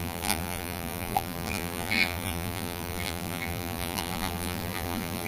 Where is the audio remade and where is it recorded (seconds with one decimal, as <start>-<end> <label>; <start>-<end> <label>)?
0.0-5.3 remade